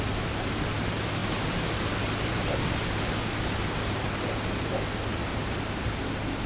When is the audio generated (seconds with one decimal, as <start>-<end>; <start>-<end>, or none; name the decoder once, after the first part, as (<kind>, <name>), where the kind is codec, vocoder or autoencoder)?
none